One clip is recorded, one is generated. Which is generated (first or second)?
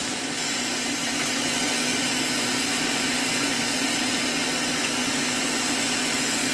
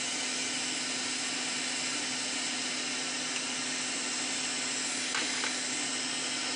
first